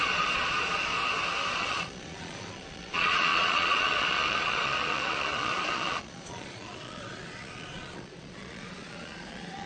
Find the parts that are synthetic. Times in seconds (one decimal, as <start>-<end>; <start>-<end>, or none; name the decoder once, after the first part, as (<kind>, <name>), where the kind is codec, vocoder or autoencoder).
0.0-0.9 (vocoder, Vocos); 1.5-9.7